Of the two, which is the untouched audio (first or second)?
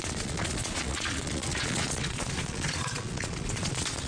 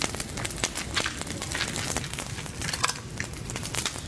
second